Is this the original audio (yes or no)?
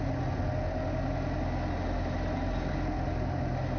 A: yes